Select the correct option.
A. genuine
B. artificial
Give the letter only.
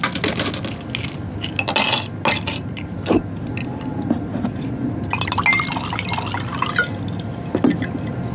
A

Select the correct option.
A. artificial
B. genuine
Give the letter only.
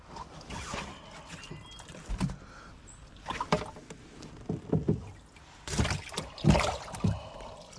B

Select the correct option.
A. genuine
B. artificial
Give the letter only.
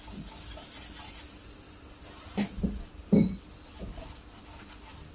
A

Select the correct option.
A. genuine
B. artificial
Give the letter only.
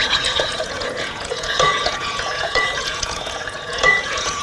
B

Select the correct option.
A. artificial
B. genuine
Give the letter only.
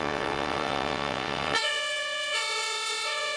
A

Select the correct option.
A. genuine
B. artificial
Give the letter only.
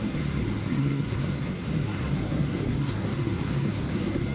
B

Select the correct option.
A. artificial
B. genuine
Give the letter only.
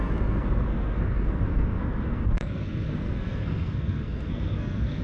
A